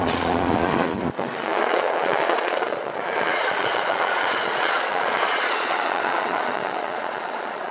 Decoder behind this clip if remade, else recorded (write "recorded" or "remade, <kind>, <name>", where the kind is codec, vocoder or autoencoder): remade, vocoder, Vocos